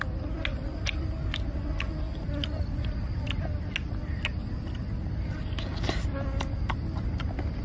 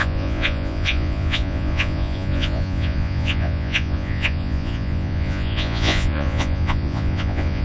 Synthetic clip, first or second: second